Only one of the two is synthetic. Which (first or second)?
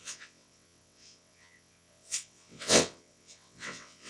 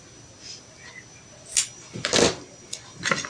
first